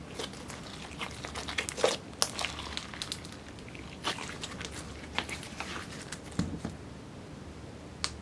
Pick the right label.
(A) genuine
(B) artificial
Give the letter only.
A